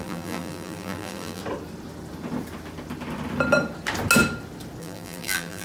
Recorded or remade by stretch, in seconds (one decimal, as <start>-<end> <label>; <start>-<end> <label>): 0.0-1.4 remade; 1.4-4.8 recorded; 4.8-5.6 remade